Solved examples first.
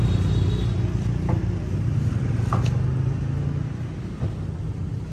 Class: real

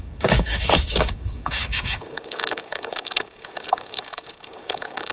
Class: fake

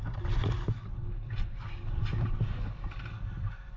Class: real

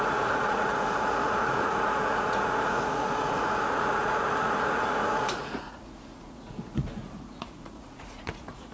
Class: fake